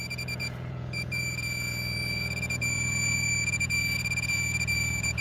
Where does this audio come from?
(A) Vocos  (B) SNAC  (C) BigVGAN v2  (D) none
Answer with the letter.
A